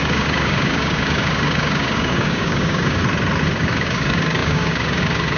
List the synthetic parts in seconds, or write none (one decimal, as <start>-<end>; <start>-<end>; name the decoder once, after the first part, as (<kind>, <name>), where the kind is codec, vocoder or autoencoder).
0.0-3.0 (codec, DAC); 3.6-5.4